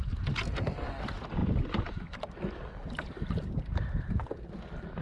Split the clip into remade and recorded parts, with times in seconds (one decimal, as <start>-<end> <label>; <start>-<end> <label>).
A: 0.0-5.0 recorded